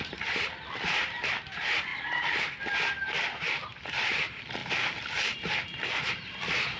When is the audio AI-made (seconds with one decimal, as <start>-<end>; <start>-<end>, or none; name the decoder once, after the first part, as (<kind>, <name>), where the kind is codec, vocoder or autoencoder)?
0.0-1.9 (vocoder, BigVGAN v2); 2.6-4.6; 6.0-6.8